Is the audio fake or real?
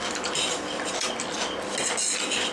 real